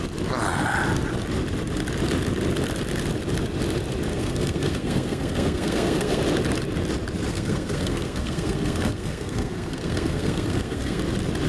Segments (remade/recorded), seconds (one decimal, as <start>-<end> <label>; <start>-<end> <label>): 0.0-4.1 recorded; 4.1-6.2 remade; 6.2-7.3 recorded; 7.3-11.0 remade; 11.0-11.5 recorded